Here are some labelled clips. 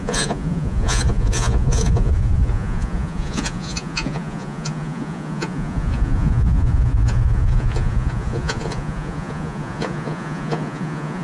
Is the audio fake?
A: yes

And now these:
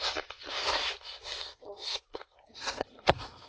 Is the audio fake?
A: yes